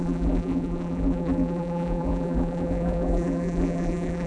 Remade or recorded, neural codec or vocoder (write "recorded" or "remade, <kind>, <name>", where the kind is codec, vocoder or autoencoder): remade, vocoder, BigVGAN v2